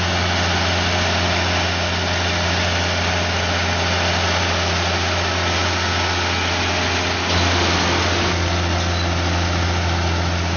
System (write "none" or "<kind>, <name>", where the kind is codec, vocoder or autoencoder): none